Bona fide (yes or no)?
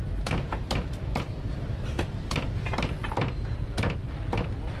no